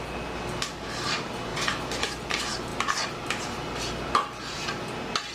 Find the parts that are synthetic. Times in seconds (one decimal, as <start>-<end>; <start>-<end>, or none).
none